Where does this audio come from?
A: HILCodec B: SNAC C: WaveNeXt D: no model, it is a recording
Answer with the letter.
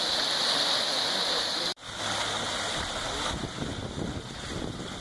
D